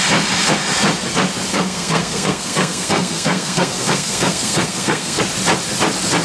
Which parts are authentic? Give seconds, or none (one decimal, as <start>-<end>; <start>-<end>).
0.0-1.5; 5.2-6.2

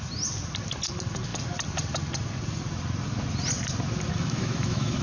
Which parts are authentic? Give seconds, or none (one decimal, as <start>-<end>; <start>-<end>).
0.0-4.1

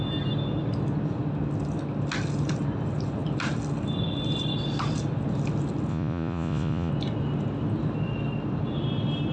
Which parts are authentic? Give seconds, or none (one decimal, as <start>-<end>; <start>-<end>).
0.0-5.9; 6.9-9.3